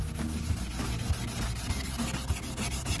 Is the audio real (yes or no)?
yes